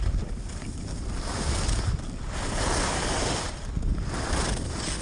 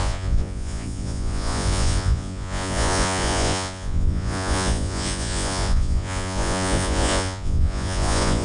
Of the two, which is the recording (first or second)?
first